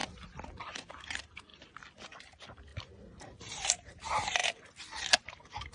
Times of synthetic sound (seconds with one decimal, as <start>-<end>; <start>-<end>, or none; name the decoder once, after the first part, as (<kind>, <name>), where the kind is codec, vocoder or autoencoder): 0.5-1.5 (vocoder, BigVGAN v2); 2.2-4.4; 5.0-5.7